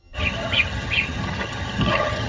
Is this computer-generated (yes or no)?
yes